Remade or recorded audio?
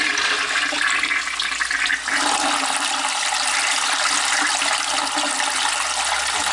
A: recorded